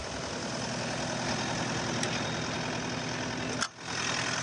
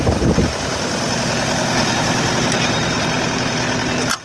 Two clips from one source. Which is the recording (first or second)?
first